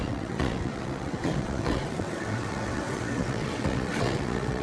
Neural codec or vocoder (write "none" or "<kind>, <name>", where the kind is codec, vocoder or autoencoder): vocoder, WaveNeXt